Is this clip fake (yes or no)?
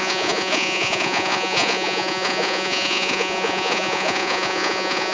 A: yes